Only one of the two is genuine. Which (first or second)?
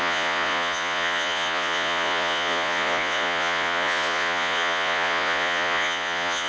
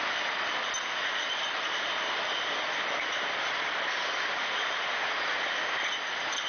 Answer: second